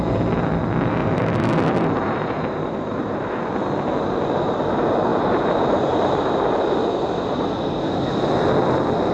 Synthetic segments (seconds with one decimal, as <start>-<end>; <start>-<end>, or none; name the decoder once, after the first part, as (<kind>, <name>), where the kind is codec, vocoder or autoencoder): 1.0-3.4 (vocoder, BigVGAN v2); 5.1-6.4